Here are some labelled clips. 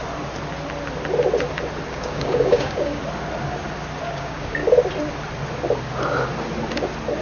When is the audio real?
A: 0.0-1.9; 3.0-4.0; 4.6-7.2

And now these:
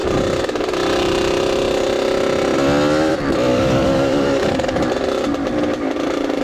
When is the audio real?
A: 0.0-3.5; 4.8-6.4